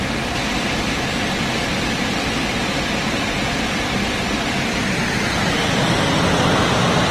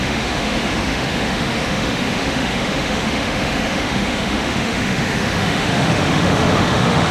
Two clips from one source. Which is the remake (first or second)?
second